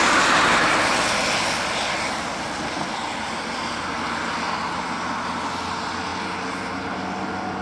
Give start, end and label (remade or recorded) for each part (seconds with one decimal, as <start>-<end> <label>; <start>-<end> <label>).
0.0-7.6 recorded

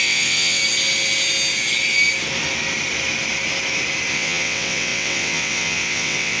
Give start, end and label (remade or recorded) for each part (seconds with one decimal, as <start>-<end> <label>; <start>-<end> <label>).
0.0-0.6 remade; 0.6-4.1 recorded; 4.1-6.4 remade